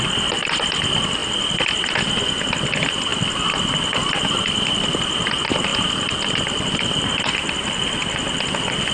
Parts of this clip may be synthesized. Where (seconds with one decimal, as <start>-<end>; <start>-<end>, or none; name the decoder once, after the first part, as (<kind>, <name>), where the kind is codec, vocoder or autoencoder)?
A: none